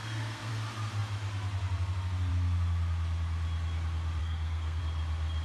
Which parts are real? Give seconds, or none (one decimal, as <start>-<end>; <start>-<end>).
0.5-4.2; 4.8-5.4